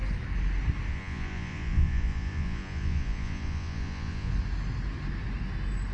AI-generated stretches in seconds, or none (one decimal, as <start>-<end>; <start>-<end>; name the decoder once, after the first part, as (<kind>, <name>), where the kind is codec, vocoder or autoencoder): 0.9-4.3 (vocoder, Vocos)